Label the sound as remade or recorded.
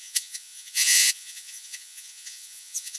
remade